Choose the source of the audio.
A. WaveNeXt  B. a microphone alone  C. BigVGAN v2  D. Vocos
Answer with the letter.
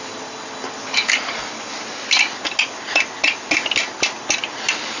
B